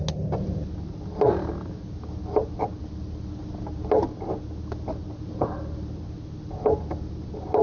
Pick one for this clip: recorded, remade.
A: recorded